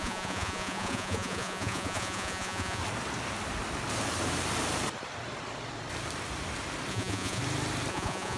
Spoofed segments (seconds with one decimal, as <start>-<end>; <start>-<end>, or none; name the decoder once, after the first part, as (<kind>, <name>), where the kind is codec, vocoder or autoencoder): 0.0-2.8 (vocoder, Vocos); 6.9-7.4; 7.9-8.4